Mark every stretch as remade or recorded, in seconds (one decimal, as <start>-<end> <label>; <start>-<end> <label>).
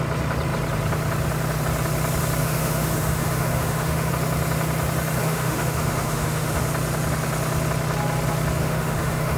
0.0-2.4 recorded; 2.4-4.1 remade; 4.1-5.2 recorded; 5.2-6.6 remade; 6.6-8.6 recorded; 8.6-9.4 remade